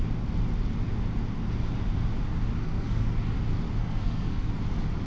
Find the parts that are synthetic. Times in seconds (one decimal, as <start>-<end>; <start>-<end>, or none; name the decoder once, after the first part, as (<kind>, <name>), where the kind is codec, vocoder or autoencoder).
2.6-3.2 (codec, SNAC); 3.8-4.6